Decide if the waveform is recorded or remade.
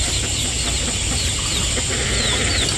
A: recorded